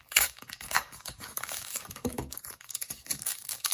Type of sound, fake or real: fake